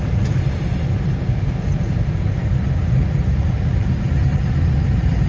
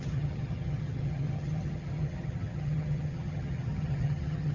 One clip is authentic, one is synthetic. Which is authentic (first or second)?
first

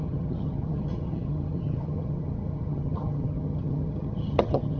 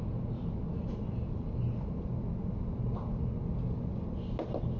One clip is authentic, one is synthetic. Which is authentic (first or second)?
second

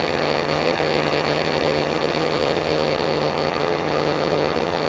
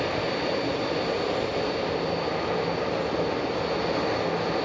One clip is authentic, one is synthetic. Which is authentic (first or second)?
second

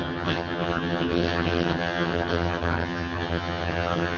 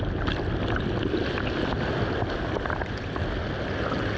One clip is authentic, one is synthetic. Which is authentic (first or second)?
second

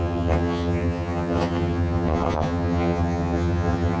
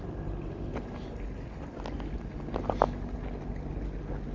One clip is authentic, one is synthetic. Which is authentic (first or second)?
second